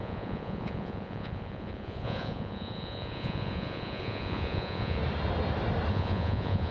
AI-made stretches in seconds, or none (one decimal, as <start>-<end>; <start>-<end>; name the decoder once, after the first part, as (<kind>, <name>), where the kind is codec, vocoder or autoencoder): 0.0-5.0 (vocoder, Vocos); 5.9-6.7

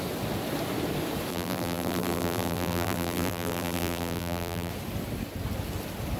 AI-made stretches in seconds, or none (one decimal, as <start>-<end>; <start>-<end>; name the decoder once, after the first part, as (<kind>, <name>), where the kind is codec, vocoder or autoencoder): 1.3-4.7 (vocoder, BigVGAN v2)